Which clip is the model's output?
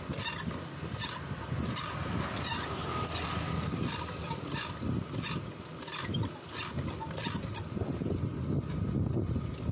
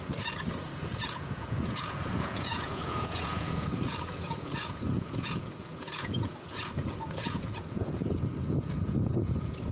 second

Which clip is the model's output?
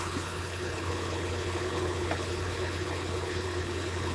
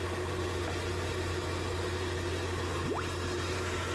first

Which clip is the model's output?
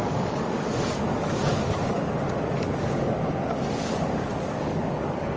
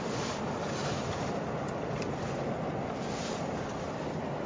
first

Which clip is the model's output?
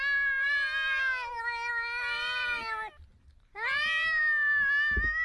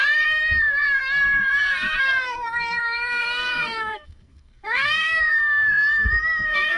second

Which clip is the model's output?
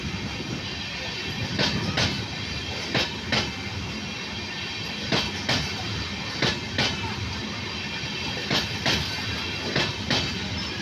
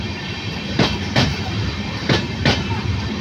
second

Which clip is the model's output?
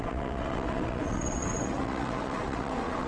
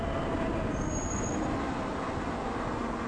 first